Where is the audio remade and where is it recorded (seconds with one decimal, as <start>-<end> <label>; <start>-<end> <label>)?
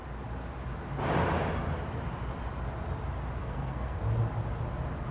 0.0-3.4 recorded; 3.4-4.0 remade; 4.0-5.1 recorded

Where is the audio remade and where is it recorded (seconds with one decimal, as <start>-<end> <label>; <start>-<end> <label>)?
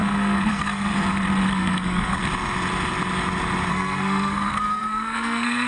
0.0-0.9 remade; 0.9-1.5 recorded; 1.5-2.2 remade; 2.2-3.7 recorded; 3.7-5.7 remade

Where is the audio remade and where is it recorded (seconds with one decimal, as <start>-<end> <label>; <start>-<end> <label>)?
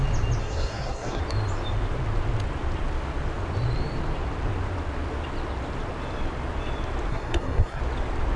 0.0-0.4 recorded; 0.4-1.2 remade; 1.2-7.1 recorded; 7.1-7.8 remade; 7.8-8.4 recorded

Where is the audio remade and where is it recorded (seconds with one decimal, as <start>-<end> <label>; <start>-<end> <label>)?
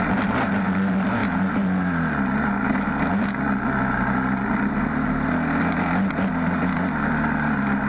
0.0-7.9 recorded